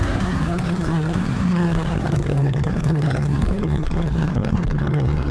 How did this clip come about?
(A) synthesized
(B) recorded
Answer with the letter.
A